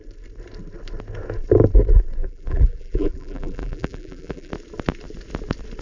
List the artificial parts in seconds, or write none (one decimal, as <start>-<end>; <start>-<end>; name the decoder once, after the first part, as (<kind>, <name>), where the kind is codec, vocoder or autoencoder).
2.2-4.5 (vocoder, BigVGAN v2)